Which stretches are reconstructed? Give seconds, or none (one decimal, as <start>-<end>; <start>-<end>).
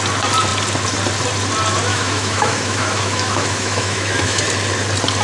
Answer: 1.9-4.4